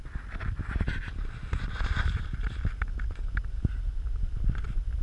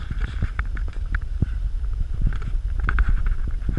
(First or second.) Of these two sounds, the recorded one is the first